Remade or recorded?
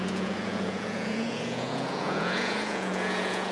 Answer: remade